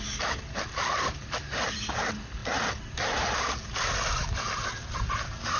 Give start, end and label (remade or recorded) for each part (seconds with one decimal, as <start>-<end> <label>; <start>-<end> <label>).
0.0-5.6 recorded